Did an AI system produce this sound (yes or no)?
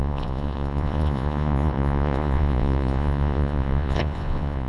yes